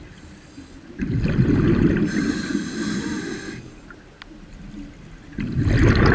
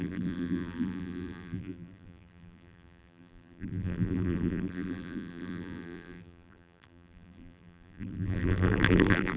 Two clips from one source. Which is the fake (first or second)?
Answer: second